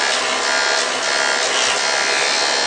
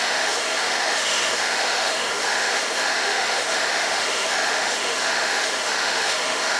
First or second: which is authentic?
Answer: first